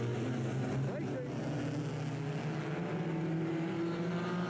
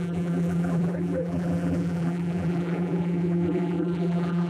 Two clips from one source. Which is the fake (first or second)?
second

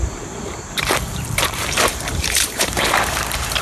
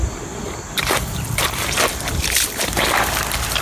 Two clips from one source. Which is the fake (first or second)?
first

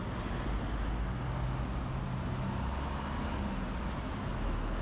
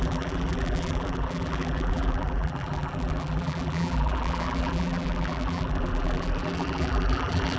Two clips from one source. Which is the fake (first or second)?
second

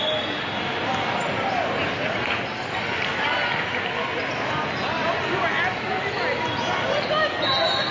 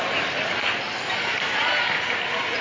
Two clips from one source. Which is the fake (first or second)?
second